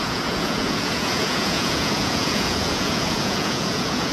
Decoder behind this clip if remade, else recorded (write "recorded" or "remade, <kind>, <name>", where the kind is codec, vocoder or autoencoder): remade, vocoder, Vocos